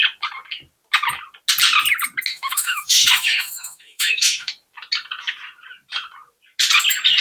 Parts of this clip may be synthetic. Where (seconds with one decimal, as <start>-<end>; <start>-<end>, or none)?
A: 2.3-4.5